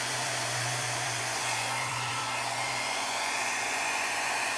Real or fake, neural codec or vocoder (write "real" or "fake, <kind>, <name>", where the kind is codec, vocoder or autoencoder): fake, vocoder, Vocos